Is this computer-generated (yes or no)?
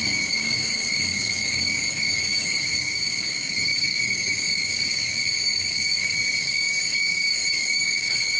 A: yes